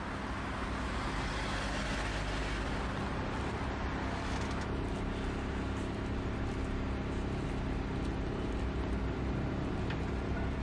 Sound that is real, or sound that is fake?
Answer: real